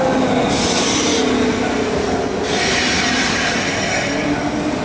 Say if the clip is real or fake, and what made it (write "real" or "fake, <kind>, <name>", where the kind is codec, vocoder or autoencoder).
real